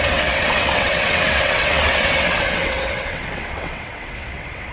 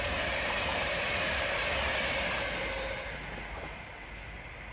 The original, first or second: second